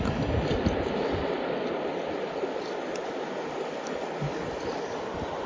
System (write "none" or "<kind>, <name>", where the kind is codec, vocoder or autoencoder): none